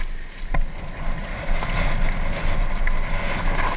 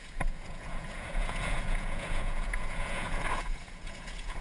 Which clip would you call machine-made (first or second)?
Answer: second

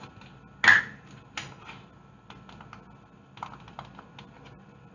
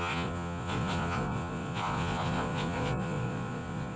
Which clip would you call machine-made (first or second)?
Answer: second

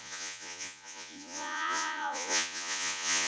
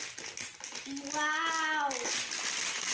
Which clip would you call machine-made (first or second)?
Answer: first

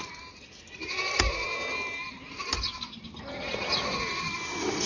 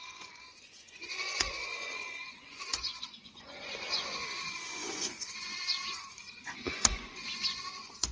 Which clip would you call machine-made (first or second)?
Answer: second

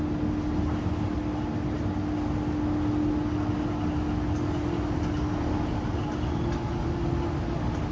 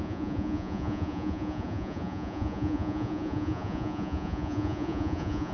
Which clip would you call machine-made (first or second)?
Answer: second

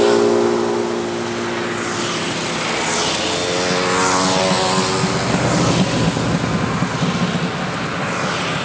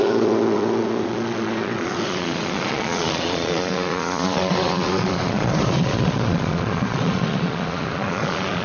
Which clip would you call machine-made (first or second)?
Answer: second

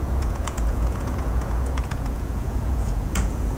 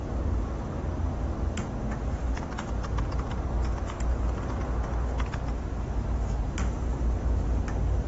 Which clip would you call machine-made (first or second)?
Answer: first